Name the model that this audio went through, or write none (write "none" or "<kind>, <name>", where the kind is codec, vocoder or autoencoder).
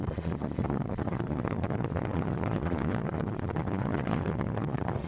vocoder, Vocos